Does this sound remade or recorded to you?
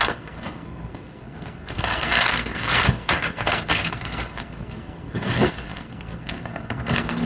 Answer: remade